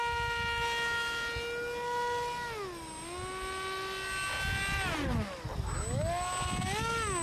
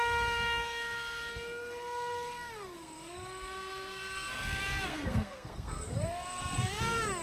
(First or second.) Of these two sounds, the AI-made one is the second